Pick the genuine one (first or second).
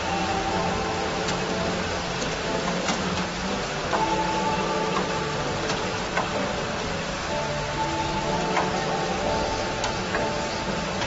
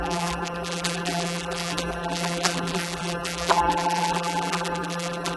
first